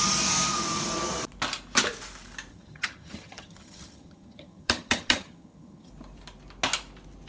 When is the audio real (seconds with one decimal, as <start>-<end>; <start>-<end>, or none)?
0.0-2.5; 5.9-7.3